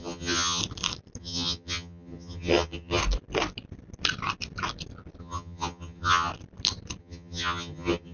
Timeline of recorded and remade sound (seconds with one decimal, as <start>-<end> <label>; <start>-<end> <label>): 0.0-0.6 remade; 0.6-1.2 recorded; 1.2-3.0 remade; 3.0-5.2 recorded; 5.2-6.3 remade; 6.3-7.0 recorded; 7.0-8.1 remade